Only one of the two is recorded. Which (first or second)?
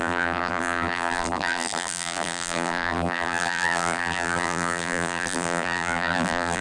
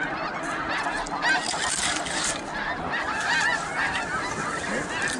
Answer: second